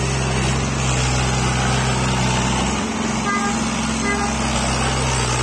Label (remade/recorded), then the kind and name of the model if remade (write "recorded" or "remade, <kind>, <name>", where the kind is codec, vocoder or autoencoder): recorded